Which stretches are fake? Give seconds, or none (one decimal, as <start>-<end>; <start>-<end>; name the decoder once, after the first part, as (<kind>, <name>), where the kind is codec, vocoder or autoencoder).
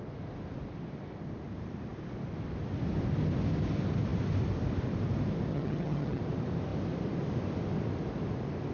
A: 5.5-6.2 (vocoder, HiFi-GAN)